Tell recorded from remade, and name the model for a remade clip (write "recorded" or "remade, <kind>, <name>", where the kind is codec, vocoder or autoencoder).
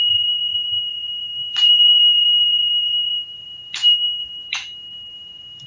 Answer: remade, vocoder, BigVGAN v2